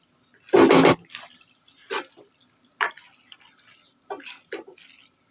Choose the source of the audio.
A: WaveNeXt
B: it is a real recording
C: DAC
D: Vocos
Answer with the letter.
B